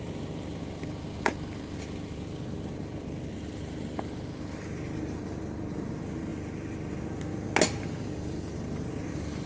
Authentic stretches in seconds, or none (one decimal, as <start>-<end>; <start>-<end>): 0.0-9.5